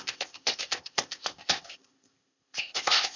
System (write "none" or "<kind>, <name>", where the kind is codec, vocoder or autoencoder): codec, ZipCodec